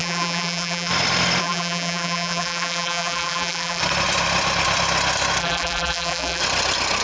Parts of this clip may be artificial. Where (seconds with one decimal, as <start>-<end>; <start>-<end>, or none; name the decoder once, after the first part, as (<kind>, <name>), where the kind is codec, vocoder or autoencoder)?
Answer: 0.0-0.9 (vocoder, BigVGAN v2); 1.4-3.8; 5.4-6.4